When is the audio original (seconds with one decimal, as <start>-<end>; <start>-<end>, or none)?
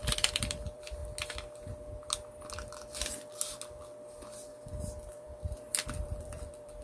1.0-5.1